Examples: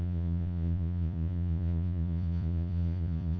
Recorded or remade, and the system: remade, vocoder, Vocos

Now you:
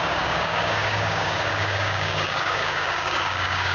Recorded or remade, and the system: remade, codec, DAC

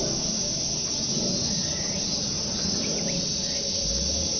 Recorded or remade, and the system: recorded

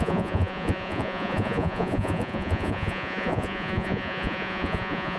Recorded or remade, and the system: remade, vocoder, Vocos